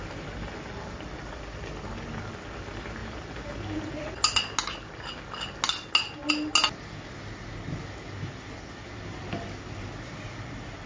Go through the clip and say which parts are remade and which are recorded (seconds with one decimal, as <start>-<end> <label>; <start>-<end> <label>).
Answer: 0.0-10.9 recorded